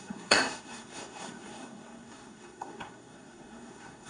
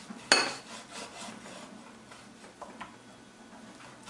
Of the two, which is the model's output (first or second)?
first